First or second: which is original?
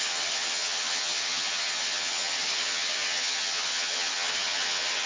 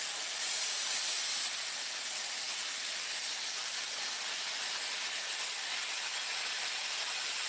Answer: second